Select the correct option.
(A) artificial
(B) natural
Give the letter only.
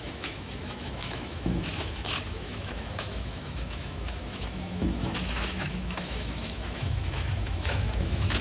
A